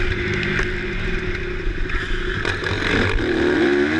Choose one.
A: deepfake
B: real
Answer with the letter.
B